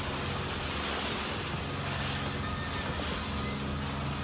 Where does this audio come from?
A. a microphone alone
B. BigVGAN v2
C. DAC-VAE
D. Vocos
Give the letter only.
A